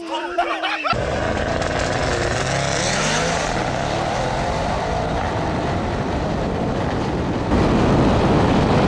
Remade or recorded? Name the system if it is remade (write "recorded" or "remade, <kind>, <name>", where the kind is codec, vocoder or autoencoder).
remade, vocoder, BigVGAN v2